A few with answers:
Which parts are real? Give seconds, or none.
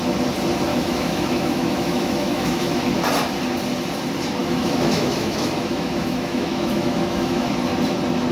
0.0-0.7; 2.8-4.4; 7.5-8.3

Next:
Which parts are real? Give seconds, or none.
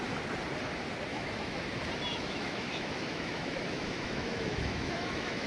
0.0-1.1; 1.6-2.1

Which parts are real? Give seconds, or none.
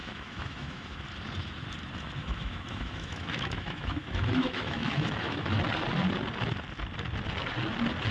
1.0-2.2; 5.5-8.1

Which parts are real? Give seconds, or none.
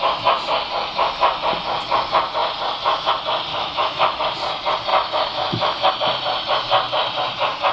0.0-3.5; 4.2-4.9; 5.9-7.7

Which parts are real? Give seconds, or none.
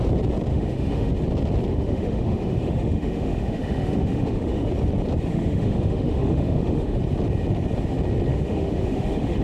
0.0-0.5; 1.1-1.7; 4.7-5.3; 7.0-8.3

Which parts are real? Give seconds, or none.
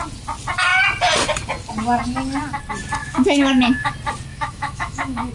0.0-3.0; 3.9-4.3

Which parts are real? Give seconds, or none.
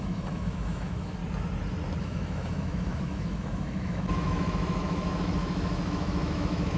1.2-2.0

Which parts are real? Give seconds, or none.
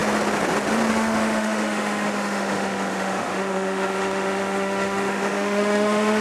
0.0-0.9